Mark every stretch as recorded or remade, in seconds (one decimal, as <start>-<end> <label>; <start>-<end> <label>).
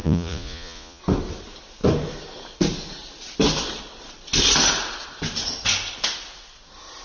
0.0-1.0 remade; 1.0-7.0 recorded